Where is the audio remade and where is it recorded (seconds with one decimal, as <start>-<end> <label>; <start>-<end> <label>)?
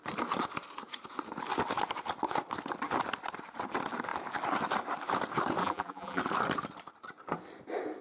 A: 0.0-5.6 recorded; 5.6-6.2 remade; 6.2-8.0 recorded